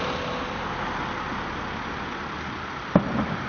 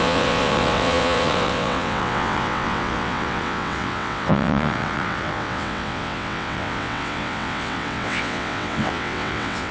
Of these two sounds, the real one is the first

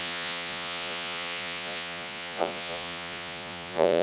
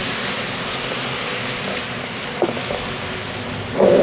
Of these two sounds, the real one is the second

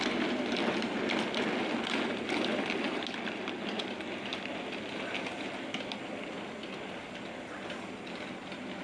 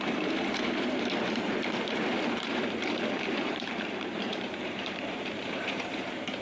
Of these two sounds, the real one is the first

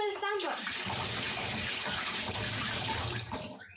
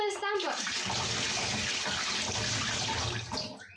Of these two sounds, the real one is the second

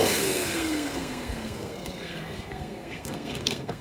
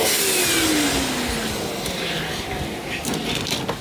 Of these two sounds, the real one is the second